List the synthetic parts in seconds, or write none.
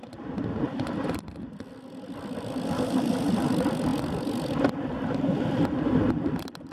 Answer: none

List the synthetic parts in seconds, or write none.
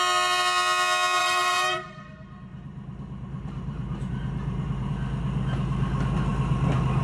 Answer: 1.2-4.9 (vocoder, BigVGAN v2)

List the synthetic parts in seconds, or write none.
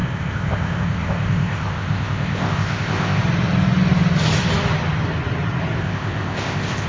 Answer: 0.0-3.2 (codec, ZipCodec); 5.8-6.9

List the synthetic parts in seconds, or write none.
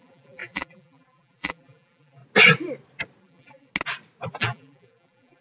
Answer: 0.0-2.2 (vocoder, BigVGAN v2); 3.2-3.7; 4.4-5.4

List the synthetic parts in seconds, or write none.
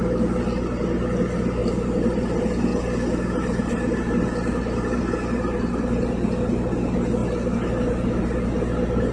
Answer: none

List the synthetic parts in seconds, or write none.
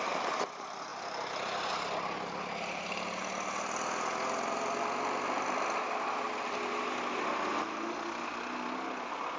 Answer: none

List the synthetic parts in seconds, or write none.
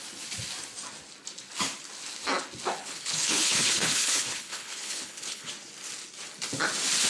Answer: 2.8-5.5 (codec, HILCodec)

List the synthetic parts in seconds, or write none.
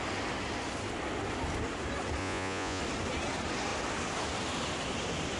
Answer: 2.2-2.8 (vocoder, Vocos)